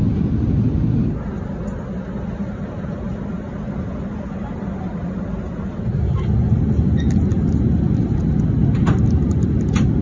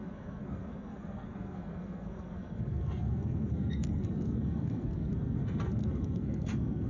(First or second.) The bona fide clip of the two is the first